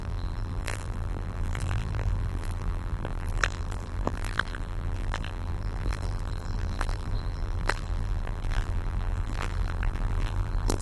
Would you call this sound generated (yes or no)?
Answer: yes